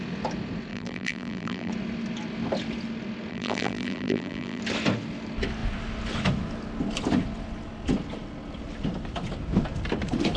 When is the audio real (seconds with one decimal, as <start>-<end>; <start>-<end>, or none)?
0.0-0.7; 1.7-3.3; 4.6-10.4